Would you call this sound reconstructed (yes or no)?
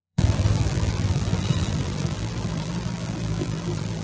yes